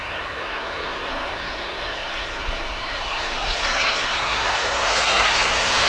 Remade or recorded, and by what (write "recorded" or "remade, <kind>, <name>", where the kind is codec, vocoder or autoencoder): remade, codec, SNAC